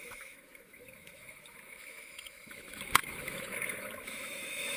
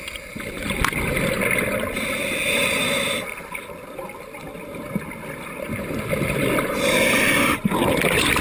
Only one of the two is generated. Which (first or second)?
first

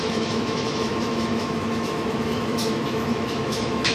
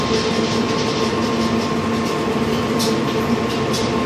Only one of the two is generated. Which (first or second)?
first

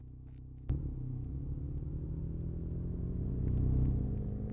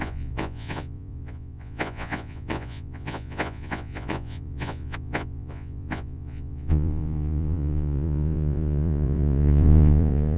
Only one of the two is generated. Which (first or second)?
second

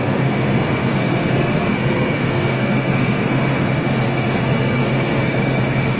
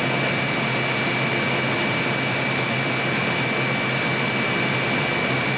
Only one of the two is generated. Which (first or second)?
first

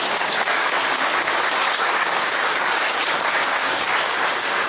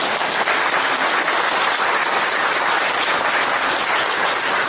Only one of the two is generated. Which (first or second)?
first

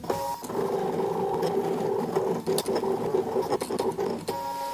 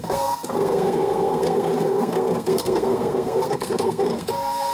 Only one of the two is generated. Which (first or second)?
second